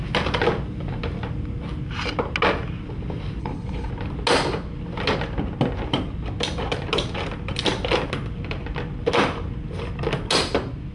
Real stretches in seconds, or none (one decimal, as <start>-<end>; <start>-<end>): 0.0-3.4; 3.9-10.9

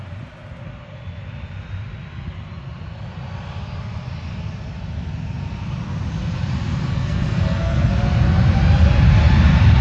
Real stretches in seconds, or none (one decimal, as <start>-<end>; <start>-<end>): 0.0-6.9; 7.9-9.8

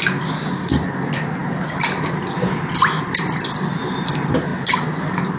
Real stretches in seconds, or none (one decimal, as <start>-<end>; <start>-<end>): 0.0-5.4

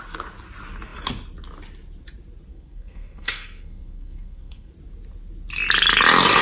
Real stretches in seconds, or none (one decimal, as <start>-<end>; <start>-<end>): 0.0-2.5; 4.7-6.4

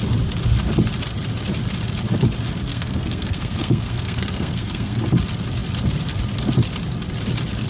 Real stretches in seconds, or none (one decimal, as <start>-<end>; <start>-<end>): 0.0-2.7; 5.0-7.7

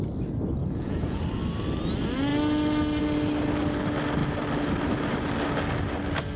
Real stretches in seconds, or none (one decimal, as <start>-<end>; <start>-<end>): 0.0-0.6; 1.2-6.4

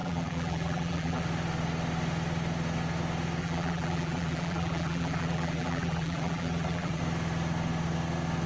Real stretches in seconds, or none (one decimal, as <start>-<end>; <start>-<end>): 1.2-3.4; 7.0-8.5